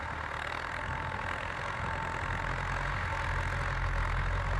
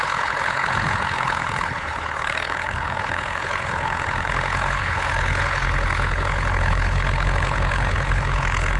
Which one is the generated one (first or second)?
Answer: second